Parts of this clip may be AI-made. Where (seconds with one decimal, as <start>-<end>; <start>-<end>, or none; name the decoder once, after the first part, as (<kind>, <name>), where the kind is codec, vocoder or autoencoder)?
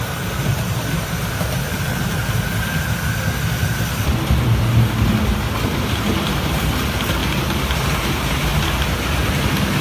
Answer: 0.0-2.2 (vocoder, BigVGAN v2); 5.6-7.2; 8.0-8.5; 9.3-9.8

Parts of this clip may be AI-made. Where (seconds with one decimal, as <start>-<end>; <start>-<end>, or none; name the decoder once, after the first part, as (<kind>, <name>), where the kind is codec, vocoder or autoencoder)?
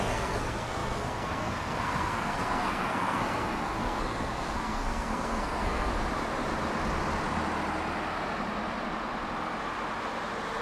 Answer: 0.0-5.9 (codec, SNAC)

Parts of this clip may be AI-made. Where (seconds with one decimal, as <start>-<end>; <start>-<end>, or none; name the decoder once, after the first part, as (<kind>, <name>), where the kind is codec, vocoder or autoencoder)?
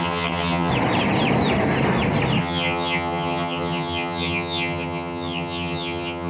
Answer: 0.0-0.7 (vocoder, HiFi-GAN); 2.4-6.3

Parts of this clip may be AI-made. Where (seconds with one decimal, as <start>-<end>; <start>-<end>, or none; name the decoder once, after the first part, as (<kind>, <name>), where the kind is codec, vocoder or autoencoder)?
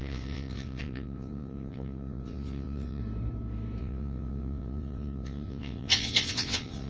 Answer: 0.0-3.0 (vocoder, WaveNeXt); 3.8-6.9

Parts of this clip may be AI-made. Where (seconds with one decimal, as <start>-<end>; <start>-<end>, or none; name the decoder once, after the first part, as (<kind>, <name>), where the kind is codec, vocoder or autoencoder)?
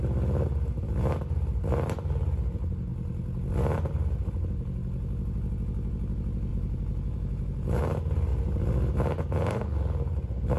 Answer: 6.5-7.8 (vocoder, BigVGAN v2)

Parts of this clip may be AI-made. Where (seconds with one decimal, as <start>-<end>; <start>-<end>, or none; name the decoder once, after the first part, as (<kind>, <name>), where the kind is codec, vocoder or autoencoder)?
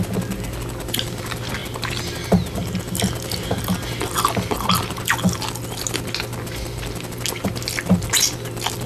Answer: none